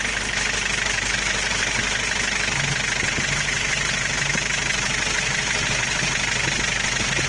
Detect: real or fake real